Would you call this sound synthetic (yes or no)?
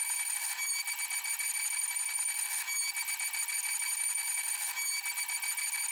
no